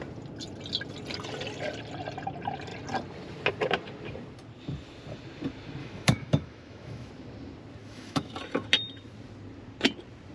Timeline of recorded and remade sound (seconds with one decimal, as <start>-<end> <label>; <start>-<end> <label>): 0.0-5.8 recorded; 5.8-7.1 remade; 7.1-7.8 recorded; 7.8-8.3 remade; 8.3-10.3 recorded